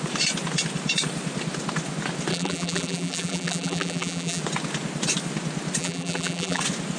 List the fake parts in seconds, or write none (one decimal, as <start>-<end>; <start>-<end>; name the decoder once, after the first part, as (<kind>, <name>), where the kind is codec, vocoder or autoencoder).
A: 2.3-4.4 (vocoder, BigVGAN v2); 5.8-6.6